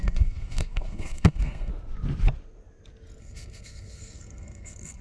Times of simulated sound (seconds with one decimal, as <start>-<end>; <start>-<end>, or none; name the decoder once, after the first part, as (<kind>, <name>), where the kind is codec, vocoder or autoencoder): 0.0-1.7 (codec, SNAC); 3.2-5.0